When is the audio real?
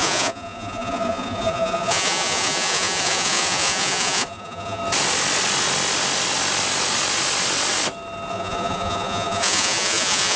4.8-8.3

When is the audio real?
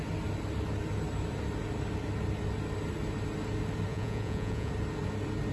0.0-3.9; 4.7-5.5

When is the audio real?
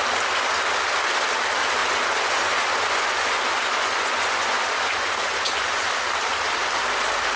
0.0-1.8; 5.9-7.4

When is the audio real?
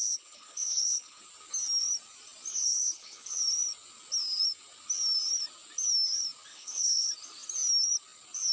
1.2-2.5; 3.4-6.5; 7.1-8.5